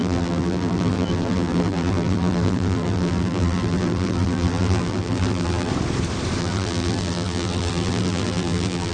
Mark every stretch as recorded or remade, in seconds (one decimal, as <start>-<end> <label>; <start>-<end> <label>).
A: 0.0-5.7 remade; 5.7-6.4 recorded; 6.4-8.9 remade